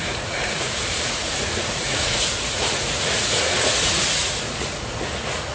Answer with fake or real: fake